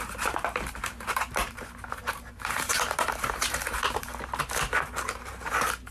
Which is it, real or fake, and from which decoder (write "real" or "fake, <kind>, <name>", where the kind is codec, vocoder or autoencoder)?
fake, vocoder, BigVGAN v2